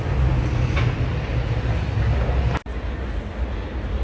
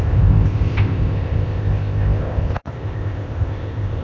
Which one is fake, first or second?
second